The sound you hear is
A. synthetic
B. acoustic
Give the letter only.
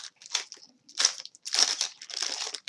A